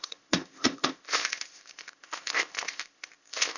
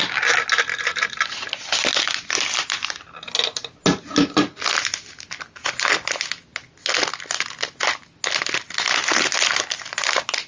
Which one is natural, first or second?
second